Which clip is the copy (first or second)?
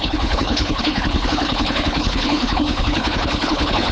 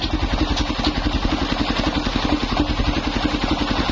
first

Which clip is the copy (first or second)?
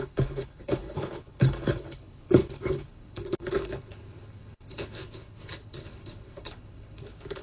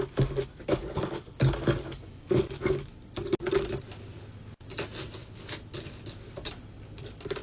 first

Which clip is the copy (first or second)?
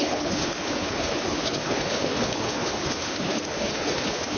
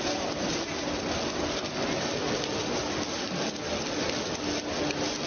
first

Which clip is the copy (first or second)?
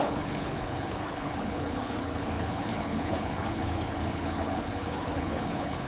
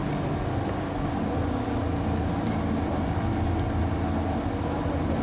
first